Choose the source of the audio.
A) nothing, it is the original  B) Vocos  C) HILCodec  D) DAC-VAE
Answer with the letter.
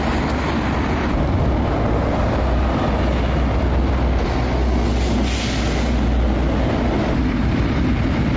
A